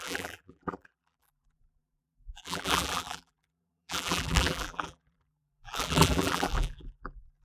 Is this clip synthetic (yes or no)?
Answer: yes